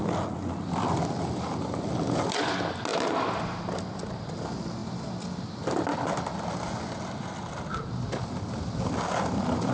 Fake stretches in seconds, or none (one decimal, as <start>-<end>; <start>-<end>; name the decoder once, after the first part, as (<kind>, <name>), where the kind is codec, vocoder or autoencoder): none